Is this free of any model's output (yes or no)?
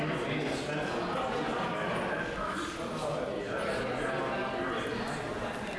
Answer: yes